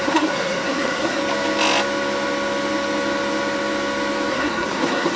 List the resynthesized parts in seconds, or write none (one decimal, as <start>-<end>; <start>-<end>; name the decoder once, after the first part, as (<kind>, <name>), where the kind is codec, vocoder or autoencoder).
0.0-1.2 (codec, SNAC); 4.3-5.2